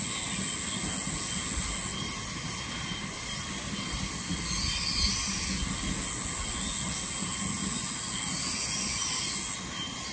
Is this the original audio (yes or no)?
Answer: yes